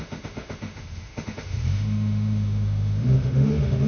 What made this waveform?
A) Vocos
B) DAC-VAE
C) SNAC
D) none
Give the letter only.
B